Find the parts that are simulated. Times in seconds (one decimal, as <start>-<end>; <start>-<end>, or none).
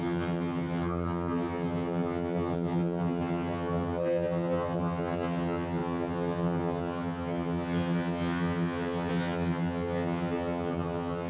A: 0.0-11.3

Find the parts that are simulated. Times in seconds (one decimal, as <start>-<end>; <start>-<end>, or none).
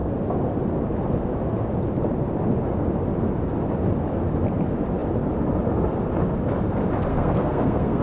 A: 7.1-8.0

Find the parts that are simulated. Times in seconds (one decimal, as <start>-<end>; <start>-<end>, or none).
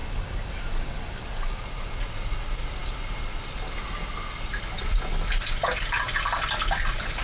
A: 0.0-0.9